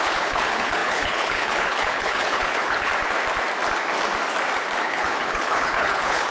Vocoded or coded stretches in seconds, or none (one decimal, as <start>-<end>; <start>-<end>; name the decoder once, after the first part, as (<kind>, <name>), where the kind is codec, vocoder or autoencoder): 0.0-2.9 (codec, HILCodec); 4.8-6.3